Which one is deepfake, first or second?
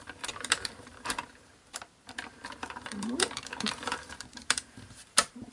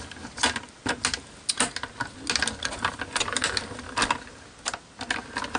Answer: first